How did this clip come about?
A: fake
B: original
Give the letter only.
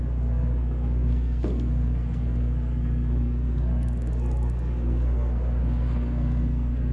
A